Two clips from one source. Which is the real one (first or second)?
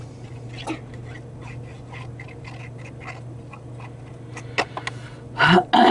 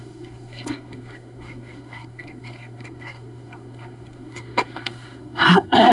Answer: first